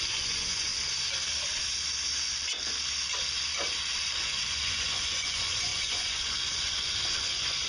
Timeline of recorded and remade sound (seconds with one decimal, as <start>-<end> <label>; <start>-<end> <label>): 0.0-0.7 remade; 0.7-4.2 recorded; 4.2-7.7 remade